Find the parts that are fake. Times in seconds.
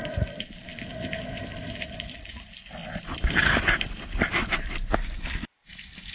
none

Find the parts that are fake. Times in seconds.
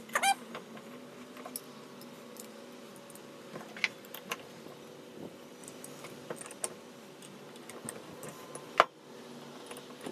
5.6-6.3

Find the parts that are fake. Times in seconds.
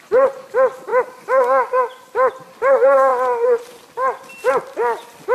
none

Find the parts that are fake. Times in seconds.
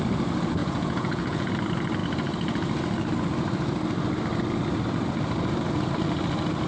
0.6-1.5